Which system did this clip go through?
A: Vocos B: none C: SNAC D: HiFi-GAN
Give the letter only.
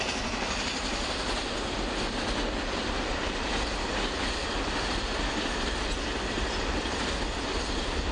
B